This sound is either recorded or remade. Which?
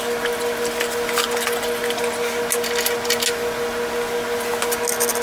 recorded